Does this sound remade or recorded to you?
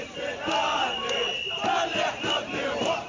recorded